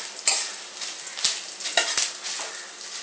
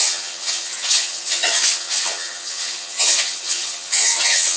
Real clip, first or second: first